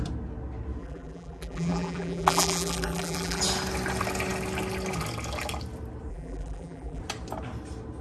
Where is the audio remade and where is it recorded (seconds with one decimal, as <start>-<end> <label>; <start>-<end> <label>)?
0.0-0.8 recorded; 0.8-3.4 remade; 3.4-6.1 recorded; 6.1-7.0 remade; 7.0-8.0 recorded